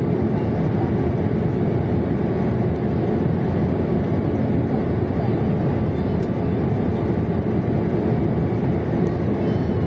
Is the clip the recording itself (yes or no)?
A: yes